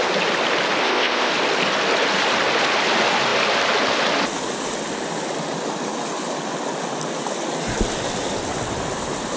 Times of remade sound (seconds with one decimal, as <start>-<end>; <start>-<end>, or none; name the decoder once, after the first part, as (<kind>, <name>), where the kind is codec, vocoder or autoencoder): 0.8-1.3 (codec, ZipCodec)